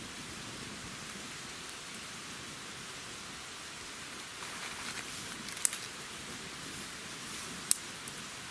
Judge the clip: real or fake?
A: real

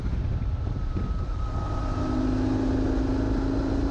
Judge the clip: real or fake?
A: real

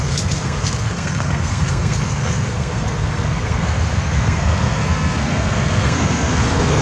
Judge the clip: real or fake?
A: fake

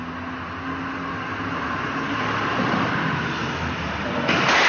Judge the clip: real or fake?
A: real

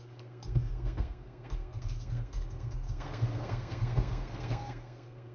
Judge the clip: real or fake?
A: fake